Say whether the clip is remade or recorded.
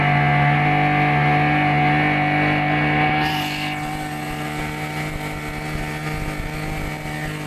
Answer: recorded